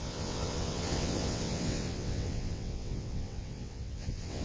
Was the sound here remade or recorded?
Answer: remade